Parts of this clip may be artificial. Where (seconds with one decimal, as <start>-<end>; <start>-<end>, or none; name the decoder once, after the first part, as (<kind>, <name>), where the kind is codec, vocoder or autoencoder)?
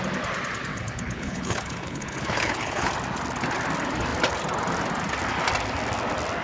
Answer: 0.7-2.9 (codec, HILCodec)